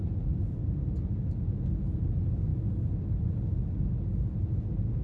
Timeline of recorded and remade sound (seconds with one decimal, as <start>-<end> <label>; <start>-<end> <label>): 0.0-5.0 recorded